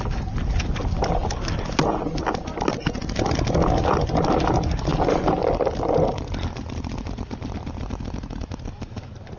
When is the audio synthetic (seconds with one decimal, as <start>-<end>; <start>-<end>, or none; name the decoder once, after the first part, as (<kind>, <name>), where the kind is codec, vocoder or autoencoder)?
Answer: none